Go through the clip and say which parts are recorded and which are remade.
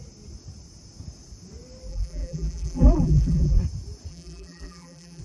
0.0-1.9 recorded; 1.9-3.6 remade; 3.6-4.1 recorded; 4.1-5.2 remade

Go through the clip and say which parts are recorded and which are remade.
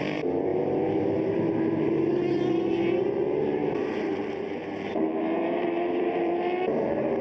0.0-0.5 recorded; 0.5-2.2 remade; 2.2-3.8 recorded; 3.8-7.2 remade